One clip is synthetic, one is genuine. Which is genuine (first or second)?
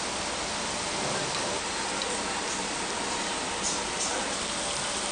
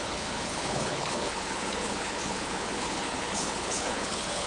first